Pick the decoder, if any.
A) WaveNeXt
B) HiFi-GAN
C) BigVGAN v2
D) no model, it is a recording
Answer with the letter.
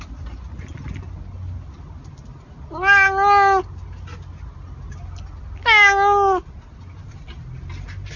D